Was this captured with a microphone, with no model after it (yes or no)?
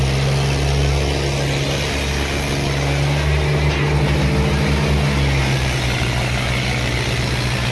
yes